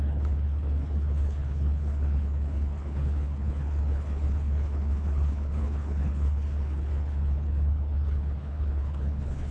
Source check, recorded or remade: remade